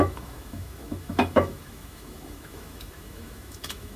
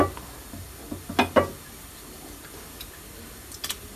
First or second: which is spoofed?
first